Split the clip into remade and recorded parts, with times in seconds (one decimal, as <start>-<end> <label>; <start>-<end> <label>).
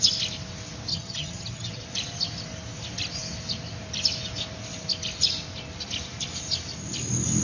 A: 0.0-0.9 recorded; 0.9-1.7 remade; 1.7-7.4 recorded